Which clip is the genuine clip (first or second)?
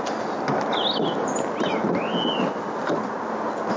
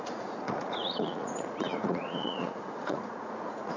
first